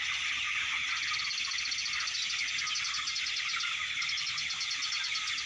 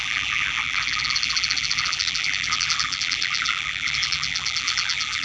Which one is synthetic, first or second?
second